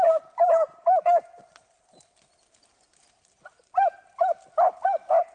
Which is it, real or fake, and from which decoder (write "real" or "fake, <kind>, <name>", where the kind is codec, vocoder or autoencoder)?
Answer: real